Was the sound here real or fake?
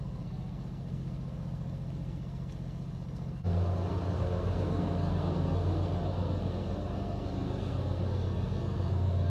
fake